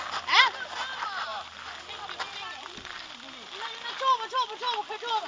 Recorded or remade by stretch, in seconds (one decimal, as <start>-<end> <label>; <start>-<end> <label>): 0.0-5.3 recorded